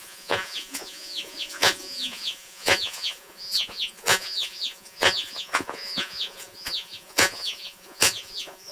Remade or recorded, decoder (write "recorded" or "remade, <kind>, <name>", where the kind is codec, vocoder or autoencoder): remade, vocoder, Vocos